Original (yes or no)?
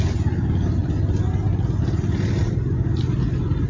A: yes